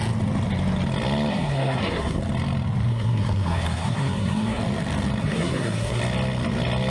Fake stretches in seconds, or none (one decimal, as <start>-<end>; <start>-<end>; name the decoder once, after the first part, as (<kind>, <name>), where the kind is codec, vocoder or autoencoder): 1.3-2.2 (codec, SNAC); 2.9-4.6; 5.2-6.0